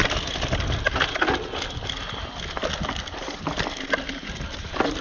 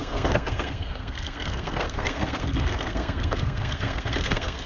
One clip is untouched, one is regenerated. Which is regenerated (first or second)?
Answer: second